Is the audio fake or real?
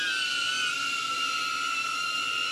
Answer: real